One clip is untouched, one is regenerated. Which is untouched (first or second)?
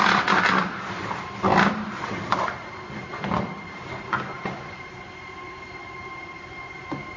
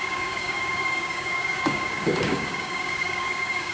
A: first